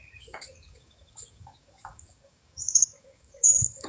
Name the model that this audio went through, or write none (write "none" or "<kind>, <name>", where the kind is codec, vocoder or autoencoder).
codec, DAC